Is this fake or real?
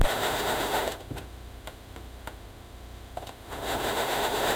fake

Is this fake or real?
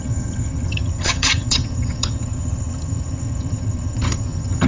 fake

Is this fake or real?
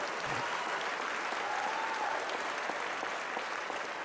real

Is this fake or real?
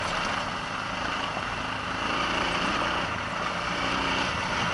real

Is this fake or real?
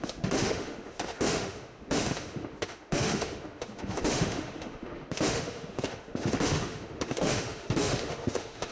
fake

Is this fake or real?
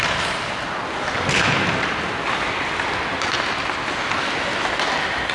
real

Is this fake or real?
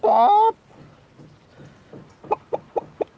real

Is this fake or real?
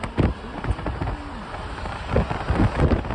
real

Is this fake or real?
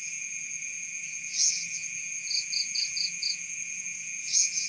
fake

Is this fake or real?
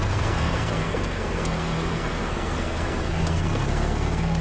fake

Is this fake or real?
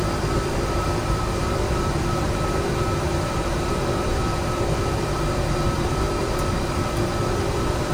fake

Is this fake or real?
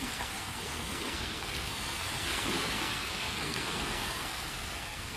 fake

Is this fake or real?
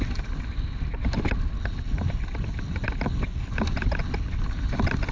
real